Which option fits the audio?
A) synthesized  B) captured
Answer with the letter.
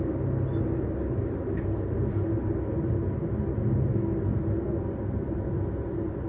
B